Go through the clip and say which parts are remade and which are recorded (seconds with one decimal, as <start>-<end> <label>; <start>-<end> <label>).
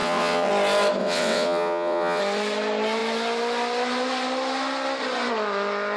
0.0-0.5 remade; 0.5-1.0 recorded; 1.0-2.2 remade; 2.2-6.0 recorded